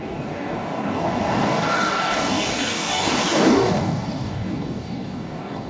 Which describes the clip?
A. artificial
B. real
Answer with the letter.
A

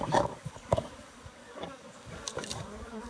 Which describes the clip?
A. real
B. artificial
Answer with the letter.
B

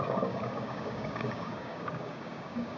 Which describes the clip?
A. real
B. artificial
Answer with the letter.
B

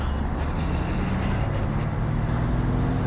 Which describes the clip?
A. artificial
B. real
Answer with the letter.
B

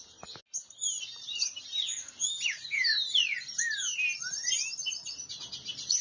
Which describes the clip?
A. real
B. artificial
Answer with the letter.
A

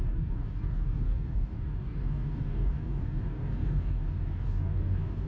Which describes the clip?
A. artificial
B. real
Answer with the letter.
A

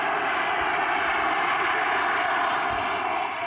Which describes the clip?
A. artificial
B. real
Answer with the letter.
B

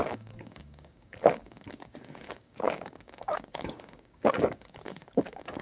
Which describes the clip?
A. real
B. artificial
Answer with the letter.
B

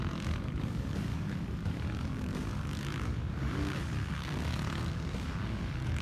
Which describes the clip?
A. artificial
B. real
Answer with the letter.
A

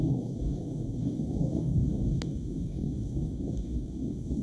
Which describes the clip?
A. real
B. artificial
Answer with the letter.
B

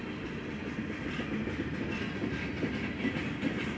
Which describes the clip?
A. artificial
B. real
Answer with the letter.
B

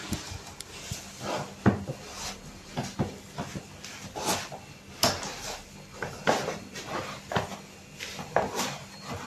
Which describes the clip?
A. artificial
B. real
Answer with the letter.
B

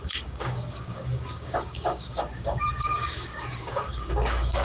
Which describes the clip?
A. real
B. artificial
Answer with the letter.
B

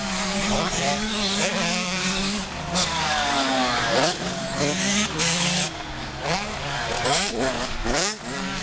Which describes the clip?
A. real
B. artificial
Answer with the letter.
B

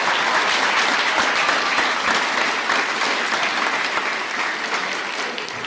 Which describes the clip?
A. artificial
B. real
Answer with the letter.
B